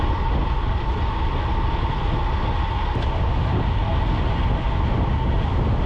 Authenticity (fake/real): real